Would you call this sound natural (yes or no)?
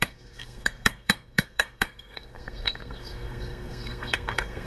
no